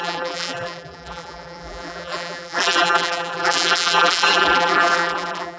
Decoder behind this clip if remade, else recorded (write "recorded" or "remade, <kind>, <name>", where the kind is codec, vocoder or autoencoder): remade, vocoder, BigVGAN v2